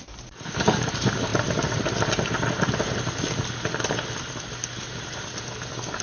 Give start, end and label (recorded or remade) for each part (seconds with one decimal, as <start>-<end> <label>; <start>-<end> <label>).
0.0-6.0 recorded